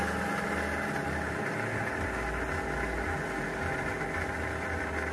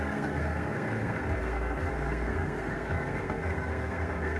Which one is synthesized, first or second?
second